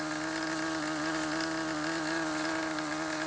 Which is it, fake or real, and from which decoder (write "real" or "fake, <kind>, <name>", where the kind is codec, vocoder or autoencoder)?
real